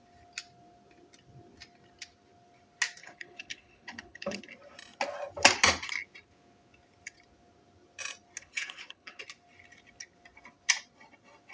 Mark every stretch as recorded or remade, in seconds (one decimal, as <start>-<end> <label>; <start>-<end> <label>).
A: 0.0-3.0 recorded; 3.0-4.4 remade; 4.4-8.4 recorded; 8.4-9.2 remade; 9.2-11.5 recorded